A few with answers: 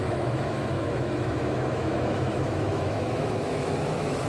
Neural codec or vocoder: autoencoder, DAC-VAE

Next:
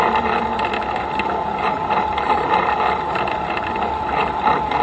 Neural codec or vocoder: none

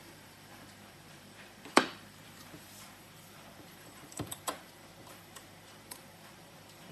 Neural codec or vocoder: vocoder, BigVGAN v2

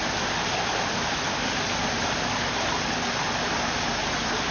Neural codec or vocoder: none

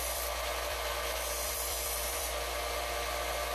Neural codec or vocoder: vocoder, BigVGAN v2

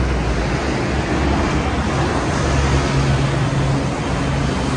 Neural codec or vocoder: none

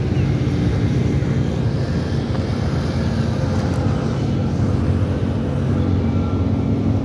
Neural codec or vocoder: none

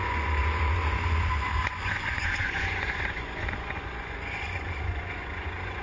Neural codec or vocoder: vocoder, Vocos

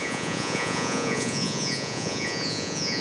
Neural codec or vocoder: vocoder, Vocos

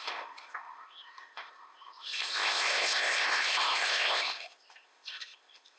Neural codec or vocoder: codec, ZipCodec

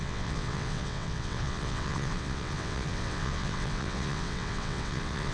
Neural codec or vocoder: vocoder, WaveNeXt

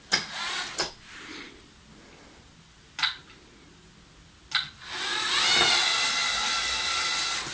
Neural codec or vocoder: none